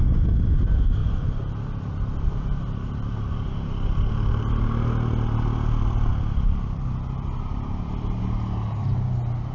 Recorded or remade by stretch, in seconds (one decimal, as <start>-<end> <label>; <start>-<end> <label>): 0.0-1.0 recorded; 1.0-4.1 remade; 4.1-6.1 recorded; 6.1-8.2 remade; 8.2-9.5 recorded